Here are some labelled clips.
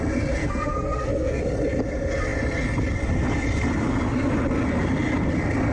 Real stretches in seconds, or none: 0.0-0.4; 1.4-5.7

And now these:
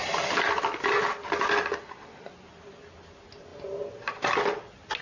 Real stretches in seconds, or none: 0.8-3.5; 4.1-5.0

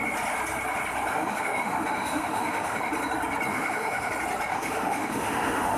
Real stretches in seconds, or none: 0.0-1.1; 2.9-3.5; 4.1-4.5

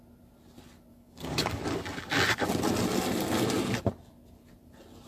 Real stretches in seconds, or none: 0.0-0.9; 1.6-5.1

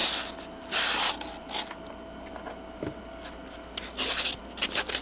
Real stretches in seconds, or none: 0.0-5.0

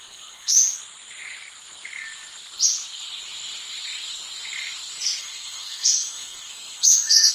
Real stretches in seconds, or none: 0.8-5.2

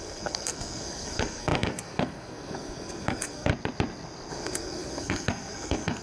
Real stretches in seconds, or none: 3.5-4.3